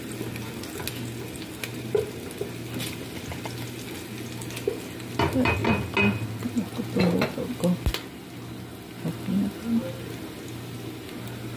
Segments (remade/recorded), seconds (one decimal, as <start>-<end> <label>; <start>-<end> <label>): 0.0-1.7 recorded; 1.7-2.3 remade; 2.3-11.6 recorded

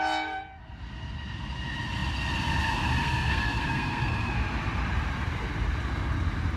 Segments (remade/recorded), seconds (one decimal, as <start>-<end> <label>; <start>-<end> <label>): 0.0-3.0 recorded; 3.0-4.3 remade; 4.3-6.6 recorded

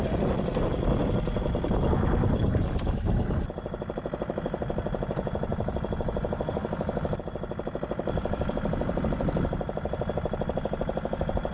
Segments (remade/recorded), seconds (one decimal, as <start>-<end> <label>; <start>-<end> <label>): 0.0-11.5 recorded

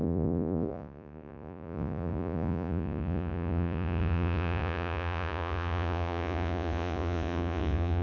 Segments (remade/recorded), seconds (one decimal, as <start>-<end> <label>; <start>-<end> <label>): 0.0-8.0 remade

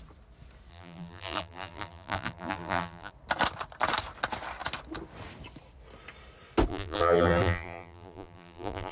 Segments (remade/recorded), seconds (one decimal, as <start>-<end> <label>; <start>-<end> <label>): 0.0-0.7 recorded; 0.7-3.1 remade; 3.1-6.7 recorded; 6.7-8.9 remade

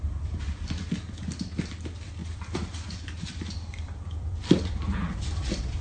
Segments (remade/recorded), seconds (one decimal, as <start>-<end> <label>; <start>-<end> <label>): 0.0-2.2 recorded; 2.2-5.8 remade